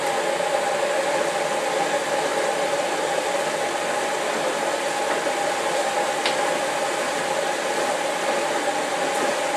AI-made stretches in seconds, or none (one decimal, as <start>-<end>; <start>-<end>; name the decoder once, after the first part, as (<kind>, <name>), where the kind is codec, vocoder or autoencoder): none